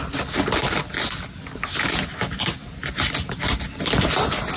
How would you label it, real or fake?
real